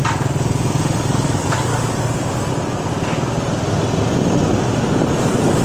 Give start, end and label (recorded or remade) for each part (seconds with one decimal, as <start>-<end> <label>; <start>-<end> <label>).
0.0-1.1 recorded; 1.1-1.7 remade; 1.7-5.1 recorded; 5.1-5.6 remade